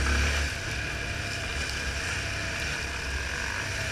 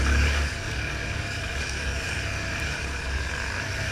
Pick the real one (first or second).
first